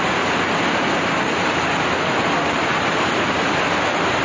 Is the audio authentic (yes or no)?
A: yes